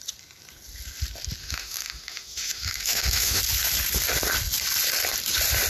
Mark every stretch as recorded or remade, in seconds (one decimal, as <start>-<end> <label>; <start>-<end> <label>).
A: 0.0-1.4 recorded; 1.4-3.4 remade; 3.4-5.7 recorded